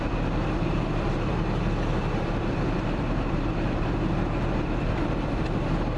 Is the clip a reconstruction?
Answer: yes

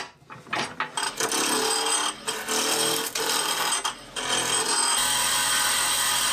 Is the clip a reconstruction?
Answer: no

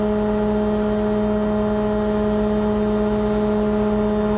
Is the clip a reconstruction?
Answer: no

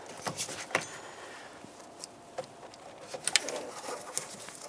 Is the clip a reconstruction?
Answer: no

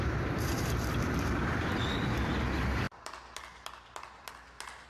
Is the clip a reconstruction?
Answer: yes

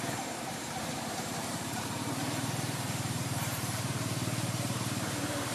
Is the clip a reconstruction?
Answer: yes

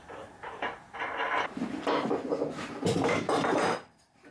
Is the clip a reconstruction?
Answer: yes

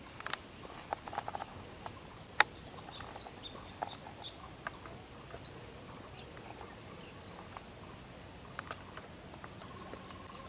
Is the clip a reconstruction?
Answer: no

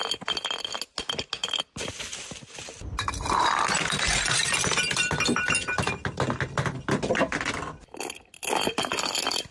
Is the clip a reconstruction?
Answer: no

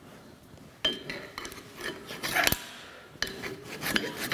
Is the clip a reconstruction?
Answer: no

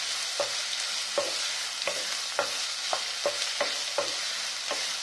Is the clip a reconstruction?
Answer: no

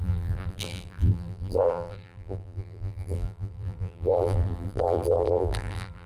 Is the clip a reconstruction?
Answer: yes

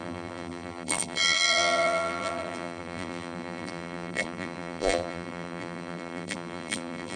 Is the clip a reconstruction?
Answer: yes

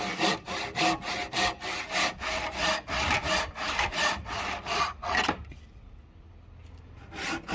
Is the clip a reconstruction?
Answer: no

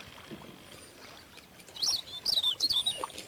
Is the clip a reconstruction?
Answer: no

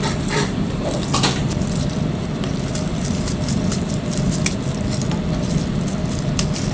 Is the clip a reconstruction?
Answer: yes